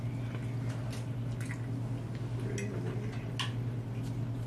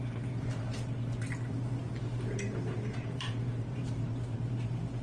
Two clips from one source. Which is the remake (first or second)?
second